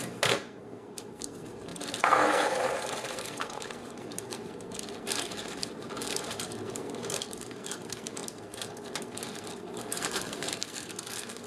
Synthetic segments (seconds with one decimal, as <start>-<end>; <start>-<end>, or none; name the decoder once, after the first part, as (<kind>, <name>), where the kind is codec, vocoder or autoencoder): 0.0-11.5 (codec, SNAC)